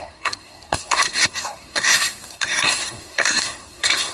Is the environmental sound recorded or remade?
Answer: remade